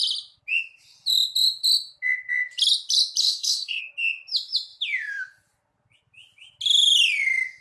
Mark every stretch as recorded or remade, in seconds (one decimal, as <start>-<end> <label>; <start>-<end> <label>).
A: 0.0-3.2 recorded; 3.2-3.8 remade; 3.8-7.6 recorded